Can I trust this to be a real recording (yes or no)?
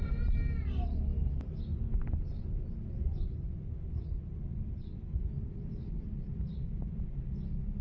yes